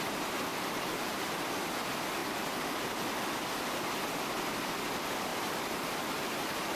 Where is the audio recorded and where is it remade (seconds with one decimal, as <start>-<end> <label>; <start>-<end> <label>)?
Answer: 0.0-0.5 recorded; 0.5-1.3 remade; 1.3-5.3 recorded; 5.3-5.9 remade; 5.9-6.8 recorded